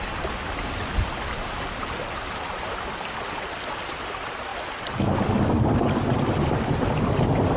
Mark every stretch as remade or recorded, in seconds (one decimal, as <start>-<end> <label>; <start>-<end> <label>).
0.0-7.6 recorded